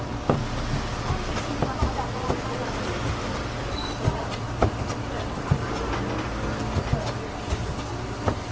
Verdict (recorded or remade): recorded